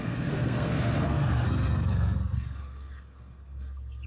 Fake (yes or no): yes